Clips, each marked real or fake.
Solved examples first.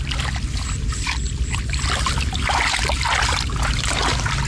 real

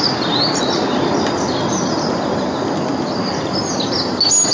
real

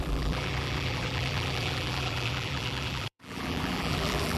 fake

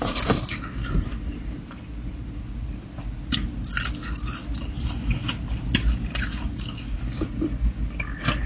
real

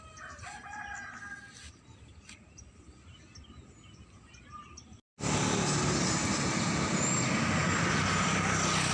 real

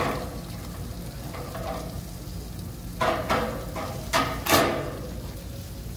real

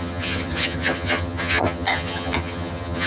fake